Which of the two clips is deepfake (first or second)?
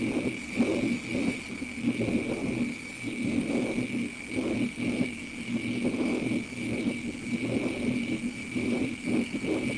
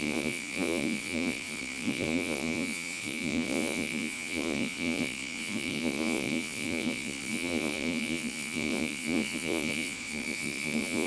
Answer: second